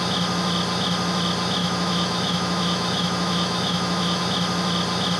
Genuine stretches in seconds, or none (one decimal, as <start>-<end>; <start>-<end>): 0.0-1.6; 4.2-5.2